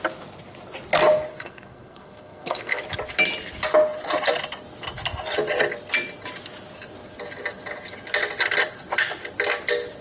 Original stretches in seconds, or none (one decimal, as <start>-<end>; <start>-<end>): 0.0-1.3; 2.8-10.0